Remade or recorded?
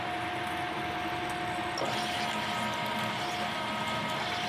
recorded